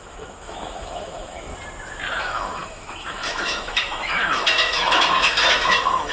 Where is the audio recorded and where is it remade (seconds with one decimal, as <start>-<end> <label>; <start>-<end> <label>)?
0.0-1.5 remade; 1.5-2.2 recorded; 2.2-6.1 remade